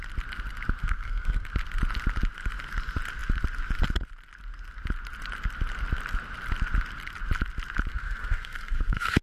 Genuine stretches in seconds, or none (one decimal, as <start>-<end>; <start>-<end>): 0.0-0.8; 1.5-7.9